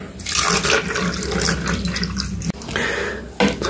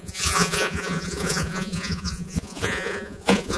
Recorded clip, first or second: first